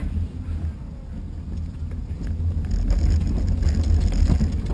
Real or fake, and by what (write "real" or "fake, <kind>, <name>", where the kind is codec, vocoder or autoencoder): real